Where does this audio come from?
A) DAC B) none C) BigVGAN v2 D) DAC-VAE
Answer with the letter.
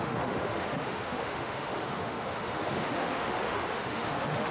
D